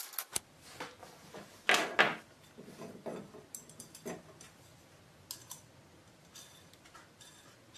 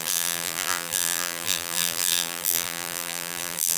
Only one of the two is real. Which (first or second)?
first